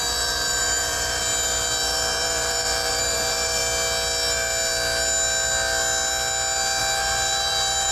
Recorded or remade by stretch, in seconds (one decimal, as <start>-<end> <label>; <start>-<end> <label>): 0.0-3.6 remade; 3.6-6.8 recorded; 6.8-7.9 remade